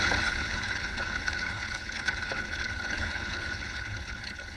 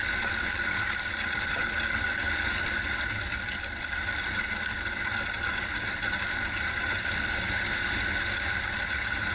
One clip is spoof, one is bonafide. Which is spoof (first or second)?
first